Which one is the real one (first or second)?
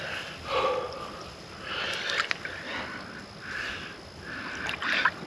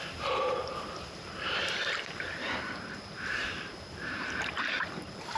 first